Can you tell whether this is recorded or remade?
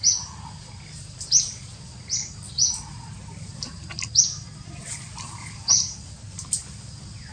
recorded